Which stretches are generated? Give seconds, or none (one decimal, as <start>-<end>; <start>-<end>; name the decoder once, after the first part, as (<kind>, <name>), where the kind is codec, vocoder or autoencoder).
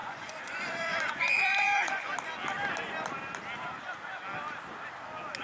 0.0-2.1 (vocoder, Vocos)